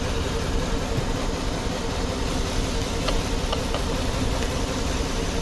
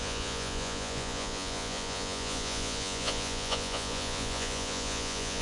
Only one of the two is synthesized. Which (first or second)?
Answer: second